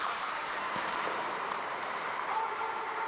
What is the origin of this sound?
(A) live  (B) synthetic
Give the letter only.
B